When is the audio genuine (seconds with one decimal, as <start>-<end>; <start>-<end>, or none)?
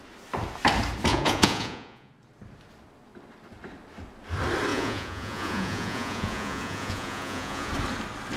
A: 0.0-1.1; 2.1-4.7; 7.7-8.4